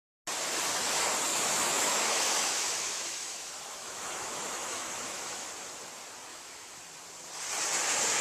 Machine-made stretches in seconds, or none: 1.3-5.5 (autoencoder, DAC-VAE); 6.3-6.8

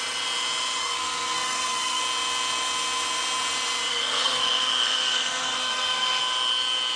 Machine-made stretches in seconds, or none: 0.8-2.0 (codec, SNAC); 3.9-6.2

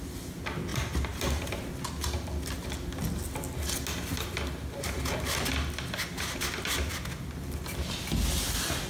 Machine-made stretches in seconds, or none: 0.7-1.7 (vocoder, BigVGAN v2)